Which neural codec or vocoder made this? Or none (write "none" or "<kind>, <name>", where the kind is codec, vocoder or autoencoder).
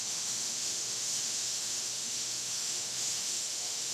autoencoder, DAC-VAE